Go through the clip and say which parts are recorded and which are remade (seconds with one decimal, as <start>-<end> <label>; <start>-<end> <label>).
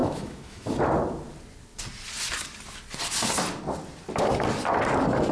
0.0-0.7 remade; 0.7-5.3 recorded